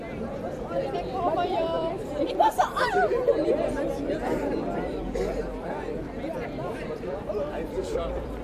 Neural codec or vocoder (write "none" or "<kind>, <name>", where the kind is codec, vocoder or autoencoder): vocoder, BigVGAN v2